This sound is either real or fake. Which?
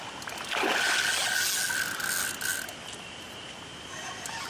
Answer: real